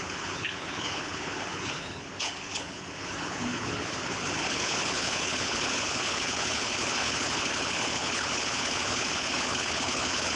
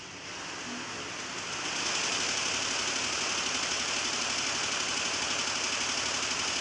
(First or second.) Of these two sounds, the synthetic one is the first